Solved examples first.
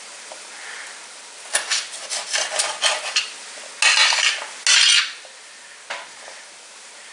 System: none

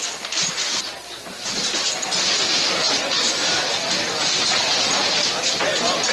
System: none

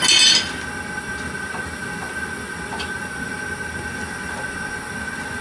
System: none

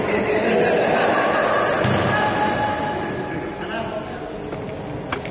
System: none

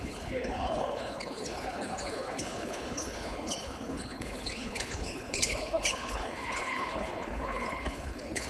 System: codec, HILCodec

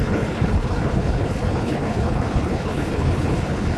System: codec, HILCodec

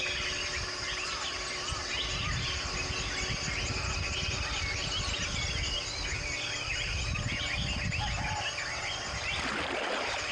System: none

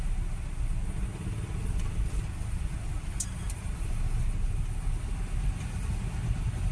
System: none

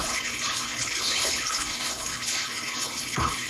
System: codec, HILCodec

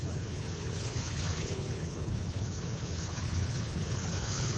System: codec, HILCodec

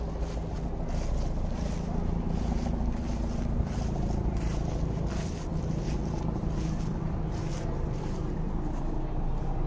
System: none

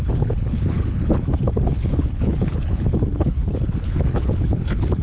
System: codec, HILCodec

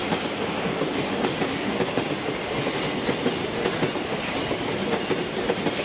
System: none